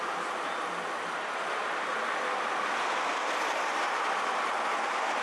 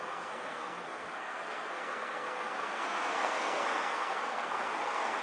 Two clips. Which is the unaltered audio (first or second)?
first